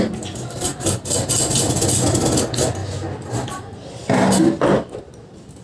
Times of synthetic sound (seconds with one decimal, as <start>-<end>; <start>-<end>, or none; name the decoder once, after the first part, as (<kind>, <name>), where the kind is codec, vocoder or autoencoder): none